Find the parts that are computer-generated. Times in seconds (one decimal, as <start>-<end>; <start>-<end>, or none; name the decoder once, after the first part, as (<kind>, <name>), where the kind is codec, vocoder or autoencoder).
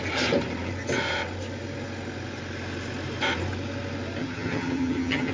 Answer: 4.2-5.3 (vocoder, HiFi-GAN)